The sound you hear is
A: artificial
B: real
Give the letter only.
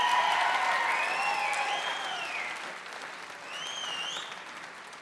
B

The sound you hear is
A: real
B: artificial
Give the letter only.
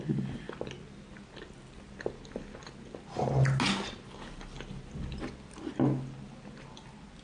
A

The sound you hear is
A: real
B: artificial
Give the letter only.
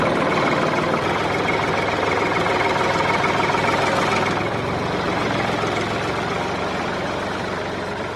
A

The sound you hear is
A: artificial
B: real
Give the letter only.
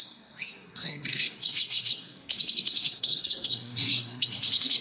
A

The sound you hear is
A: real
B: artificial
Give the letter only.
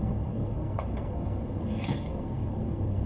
B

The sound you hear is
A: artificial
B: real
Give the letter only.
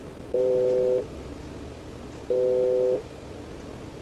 B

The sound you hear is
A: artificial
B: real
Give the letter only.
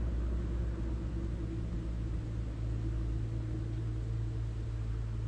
B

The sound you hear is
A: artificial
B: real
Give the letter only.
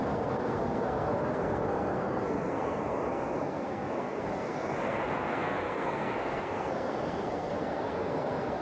A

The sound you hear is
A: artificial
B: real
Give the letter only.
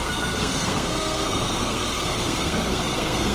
A